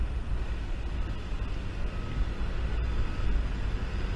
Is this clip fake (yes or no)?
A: no